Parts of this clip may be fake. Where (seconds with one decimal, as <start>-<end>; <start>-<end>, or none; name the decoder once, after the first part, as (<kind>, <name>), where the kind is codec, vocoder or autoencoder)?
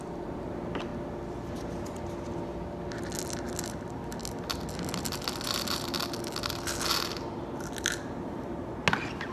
none